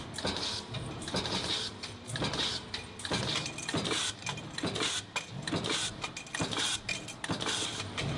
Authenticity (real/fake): real